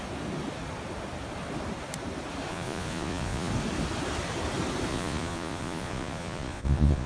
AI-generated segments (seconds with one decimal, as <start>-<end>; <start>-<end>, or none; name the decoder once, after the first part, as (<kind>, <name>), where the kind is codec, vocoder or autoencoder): 2.5-3.5 (vocoder, Vocos); 4.9-7.1